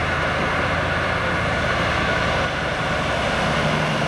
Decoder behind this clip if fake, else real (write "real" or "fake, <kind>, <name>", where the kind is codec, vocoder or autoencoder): fake, vocoder, BigVGAN v2